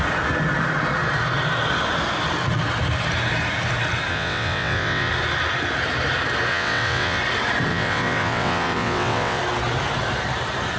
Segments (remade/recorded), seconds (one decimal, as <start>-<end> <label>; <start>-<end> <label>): 0.0-4.1 recorded; 4.1-5.1 remade; 5.1-6.5 recorded; 6.5-7.2 remade; 7.2-7.7 recorded; 7.7-9.4 remade; 9.4-10.8 recorded